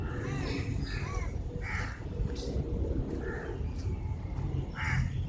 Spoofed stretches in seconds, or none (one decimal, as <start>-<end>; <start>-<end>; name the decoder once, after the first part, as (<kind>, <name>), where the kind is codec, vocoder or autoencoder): none